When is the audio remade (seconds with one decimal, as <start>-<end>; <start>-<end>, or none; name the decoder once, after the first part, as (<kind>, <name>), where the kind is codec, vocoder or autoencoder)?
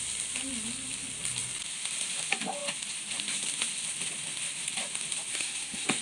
5.3-6.0 (codec, SNAC)